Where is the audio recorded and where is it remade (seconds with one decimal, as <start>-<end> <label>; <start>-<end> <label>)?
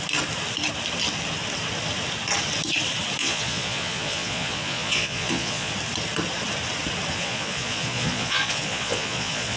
0.0-3.2 recorded; 3.2-5.7 remade; 5.7-7.1 recorded; 7.1-9.6 remade